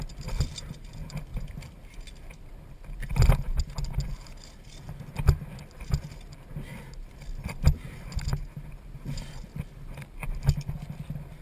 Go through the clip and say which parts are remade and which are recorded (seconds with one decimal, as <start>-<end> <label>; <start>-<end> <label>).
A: 0.0-11.4 recorded